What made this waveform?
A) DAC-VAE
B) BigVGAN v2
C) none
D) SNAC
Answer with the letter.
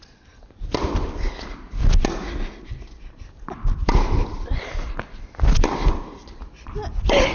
C